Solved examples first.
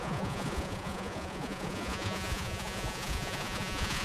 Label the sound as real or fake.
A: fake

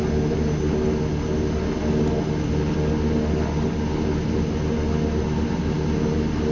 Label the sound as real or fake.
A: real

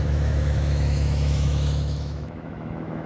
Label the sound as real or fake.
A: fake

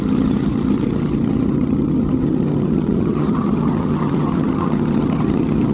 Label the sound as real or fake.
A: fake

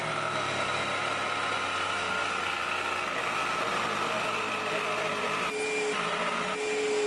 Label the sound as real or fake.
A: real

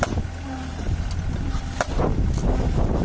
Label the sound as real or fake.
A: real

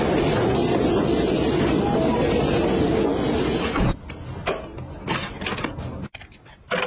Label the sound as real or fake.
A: real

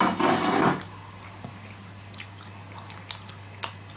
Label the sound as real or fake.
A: real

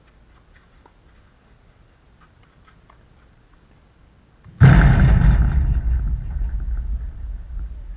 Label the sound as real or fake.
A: real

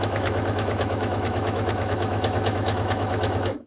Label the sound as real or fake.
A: fake